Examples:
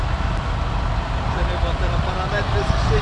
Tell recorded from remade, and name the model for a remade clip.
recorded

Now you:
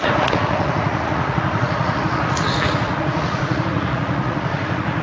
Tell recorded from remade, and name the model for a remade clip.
remade, vocoder, Vocos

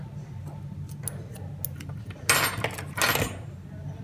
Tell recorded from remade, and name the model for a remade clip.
recorded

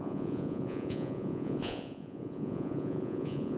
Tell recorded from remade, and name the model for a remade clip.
remade, vocoder, Vocos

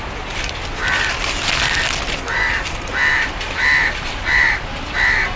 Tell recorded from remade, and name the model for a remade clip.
recorded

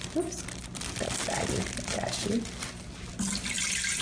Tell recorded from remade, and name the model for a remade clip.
recorded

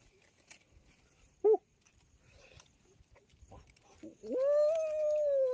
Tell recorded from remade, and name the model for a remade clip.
recorded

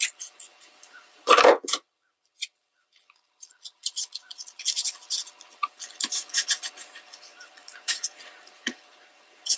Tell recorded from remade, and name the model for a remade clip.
remade, vocoder, Vocos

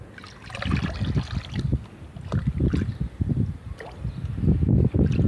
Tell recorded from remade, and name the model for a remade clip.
recorded